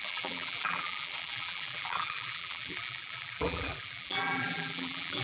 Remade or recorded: remade